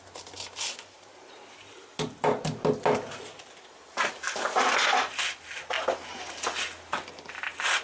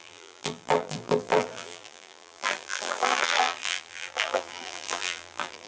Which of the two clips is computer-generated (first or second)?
second